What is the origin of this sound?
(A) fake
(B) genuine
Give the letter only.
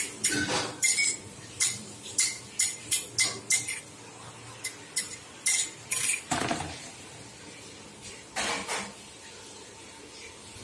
B